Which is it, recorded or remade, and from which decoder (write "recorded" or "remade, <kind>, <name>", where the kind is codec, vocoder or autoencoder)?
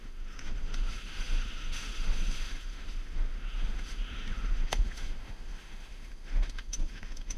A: remade, autoencoder, DAC-VAE